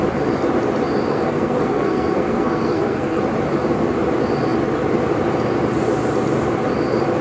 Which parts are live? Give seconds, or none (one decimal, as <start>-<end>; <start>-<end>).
0.0-1.1; 3.2-7.2